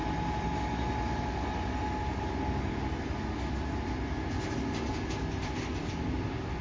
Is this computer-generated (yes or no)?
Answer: no